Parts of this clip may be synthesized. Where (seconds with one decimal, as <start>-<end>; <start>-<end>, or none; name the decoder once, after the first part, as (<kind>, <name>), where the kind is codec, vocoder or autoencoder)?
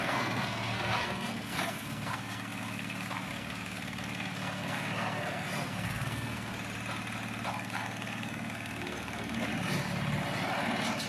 0.0-6.5 (codec, SNAC); 7.5-9.5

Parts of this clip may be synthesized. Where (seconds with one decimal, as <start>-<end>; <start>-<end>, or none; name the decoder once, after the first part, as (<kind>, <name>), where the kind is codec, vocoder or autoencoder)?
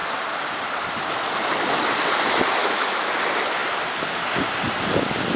2.6-3.1 (autoencoder, DAC-VAE)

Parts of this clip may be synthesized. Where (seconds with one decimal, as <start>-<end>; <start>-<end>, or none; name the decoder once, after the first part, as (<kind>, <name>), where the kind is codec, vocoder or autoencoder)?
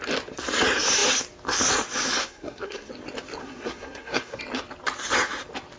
2.2-2.9 (codec, SNAC); 3.4-4.4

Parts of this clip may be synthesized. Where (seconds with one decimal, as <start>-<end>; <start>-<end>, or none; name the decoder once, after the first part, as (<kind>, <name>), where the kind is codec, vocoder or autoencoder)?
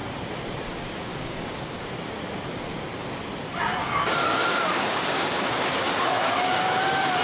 1.1-1.9 (codec, DAC); 3.8-7.2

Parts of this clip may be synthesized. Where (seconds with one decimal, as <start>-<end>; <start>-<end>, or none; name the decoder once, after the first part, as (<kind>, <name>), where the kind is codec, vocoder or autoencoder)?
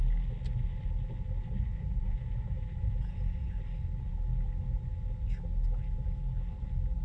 1.7-3.6 (vocoder, Vocos)